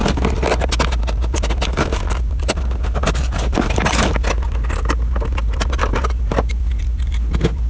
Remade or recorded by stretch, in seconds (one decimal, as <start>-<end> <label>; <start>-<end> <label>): 0.0-3.0 recorded; 3.0-4.2 remade; 4.2-7.7 recorded